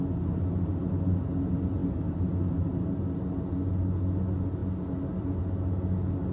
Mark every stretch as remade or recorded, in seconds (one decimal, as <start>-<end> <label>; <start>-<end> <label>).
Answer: 0.0-6.3 recorded